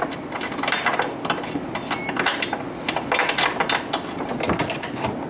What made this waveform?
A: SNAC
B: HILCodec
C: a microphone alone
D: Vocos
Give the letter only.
C